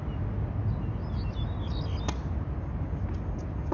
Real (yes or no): yes